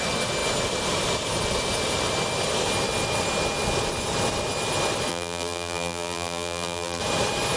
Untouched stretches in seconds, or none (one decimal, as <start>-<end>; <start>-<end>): 0.0-5.1; 7.0-7.6